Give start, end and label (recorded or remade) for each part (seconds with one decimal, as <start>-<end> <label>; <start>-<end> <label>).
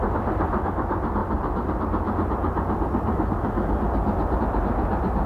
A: 0.0-5.3 recorded